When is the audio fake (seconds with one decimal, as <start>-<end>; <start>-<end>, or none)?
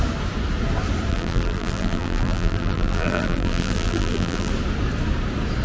1.1-4.5